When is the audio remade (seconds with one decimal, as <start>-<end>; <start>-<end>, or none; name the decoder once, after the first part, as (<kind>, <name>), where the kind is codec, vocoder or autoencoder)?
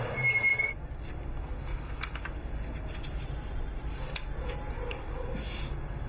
none